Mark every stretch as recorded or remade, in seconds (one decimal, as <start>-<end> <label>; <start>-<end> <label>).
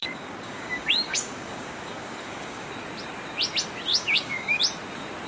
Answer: 0.0-2.7 remade; 2.7-3.9 recorded; 3.9-4.6 remade; 4.6-5.3 recorded